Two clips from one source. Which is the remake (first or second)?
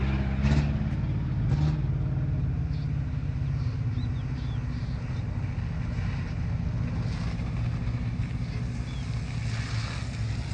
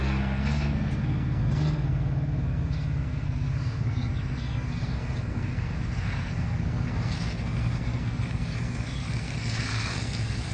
second